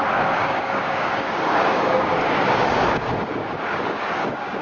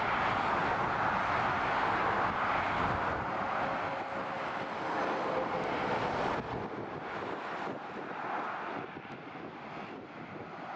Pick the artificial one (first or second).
first